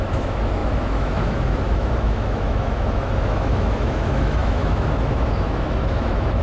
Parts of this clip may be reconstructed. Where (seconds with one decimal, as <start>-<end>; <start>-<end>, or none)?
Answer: 0.0-6.4